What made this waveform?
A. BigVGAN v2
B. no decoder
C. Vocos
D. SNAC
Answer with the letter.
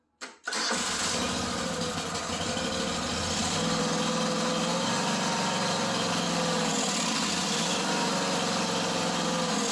B